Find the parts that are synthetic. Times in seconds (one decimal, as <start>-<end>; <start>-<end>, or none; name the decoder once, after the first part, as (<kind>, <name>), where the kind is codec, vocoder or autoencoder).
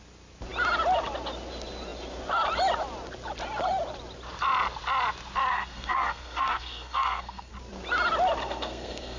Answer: 5.5-7.5 (codec, SNAC); 8.4-9.2